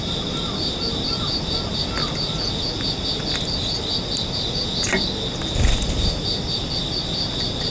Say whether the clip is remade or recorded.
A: recorded